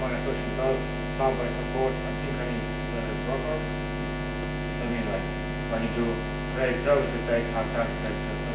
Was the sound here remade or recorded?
recorded